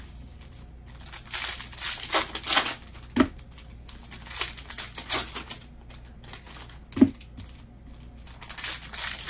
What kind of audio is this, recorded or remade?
recorded